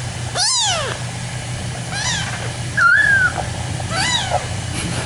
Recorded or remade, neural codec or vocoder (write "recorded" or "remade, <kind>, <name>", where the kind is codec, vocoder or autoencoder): recorded